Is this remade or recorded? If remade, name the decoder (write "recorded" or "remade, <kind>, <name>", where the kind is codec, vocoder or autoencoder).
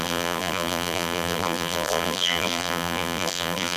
remade, vocoder, BigVGAN v2